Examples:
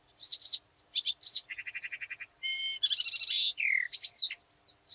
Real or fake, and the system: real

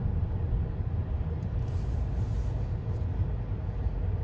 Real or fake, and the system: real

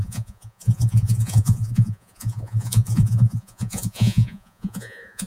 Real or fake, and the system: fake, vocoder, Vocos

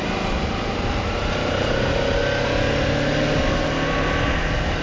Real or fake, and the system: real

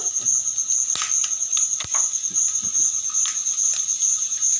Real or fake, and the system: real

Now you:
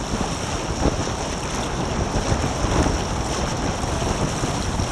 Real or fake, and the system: real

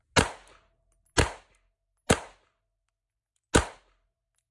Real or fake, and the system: real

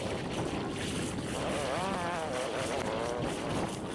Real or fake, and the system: real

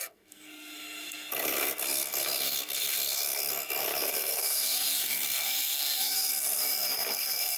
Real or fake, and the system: fake, codec, SNAC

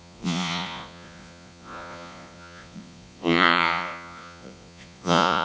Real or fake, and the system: fake, vocoder, Vocos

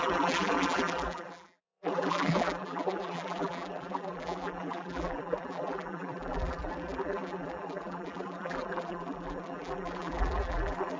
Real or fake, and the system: fake, vocoder, BigVGAN v2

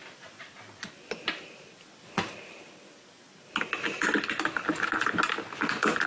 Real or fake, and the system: real